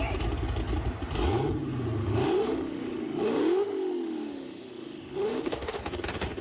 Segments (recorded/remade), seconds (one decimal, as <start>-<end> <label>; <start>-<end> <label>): 0.0-2.0 recorded; 2.0-5.8 remade; 5.8-6.4 recorded